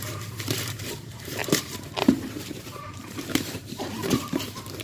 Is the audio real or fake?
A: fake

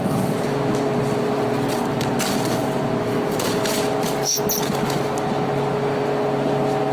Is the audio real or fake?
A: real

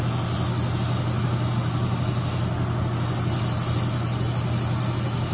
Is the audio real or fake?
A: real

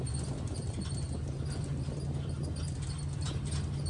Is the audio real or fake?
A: real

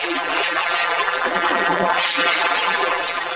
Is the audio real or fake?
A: fake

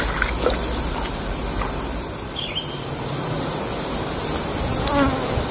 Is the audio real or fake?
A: real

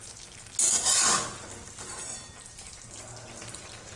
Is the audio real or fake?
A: real